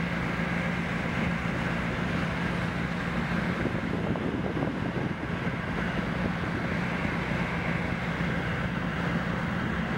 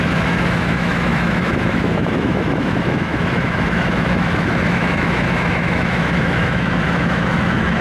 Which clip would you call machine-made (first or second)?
second